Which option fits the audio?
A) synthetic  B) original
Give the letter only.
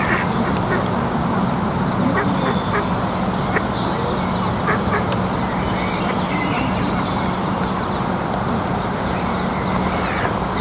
B